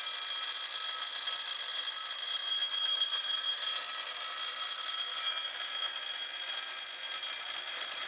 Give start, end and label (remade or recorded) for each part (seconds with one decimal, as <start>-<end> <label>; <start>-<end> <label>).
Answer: 0.0-8.1 recorded